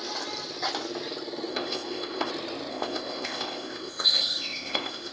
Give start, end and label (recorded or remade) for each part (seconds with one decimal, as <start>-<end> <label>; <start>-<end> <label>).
0.0-1.5 recorded; 1.5-2.3 remade; 2.3-2.7 recorded; 2.7-5.1 remade